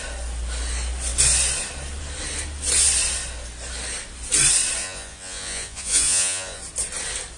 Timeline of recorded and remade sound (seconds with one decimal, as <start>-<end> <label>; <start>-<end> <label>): 0.0-4.8 recorded; 4.8-6.6 remade; 6.6-7.4 recorded